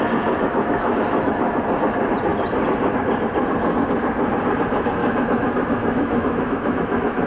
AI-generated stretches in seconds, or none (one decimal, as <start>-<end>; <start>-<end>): 0.5-1.6; 5.0-7.3